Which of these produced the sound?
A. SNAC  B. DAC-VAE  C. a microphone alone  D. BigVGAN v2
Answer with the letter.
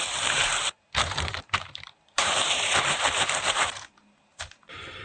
D